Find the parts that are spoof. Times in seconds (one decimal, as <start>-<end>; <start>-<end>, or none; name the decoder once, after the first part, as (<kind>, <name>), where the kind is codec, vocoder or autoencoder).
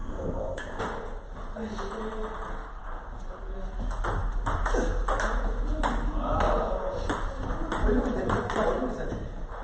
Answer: 0.0-0.8 (codec, ZipCodec)